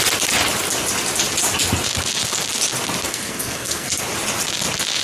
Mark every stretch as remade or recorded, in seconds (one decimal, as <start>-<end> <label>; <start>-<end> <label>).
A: 0.0-3.1 recorded; 3.1-4.0 remade; 4.0-5.0 recorded